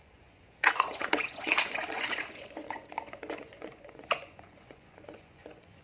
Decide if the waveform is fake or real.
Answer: fake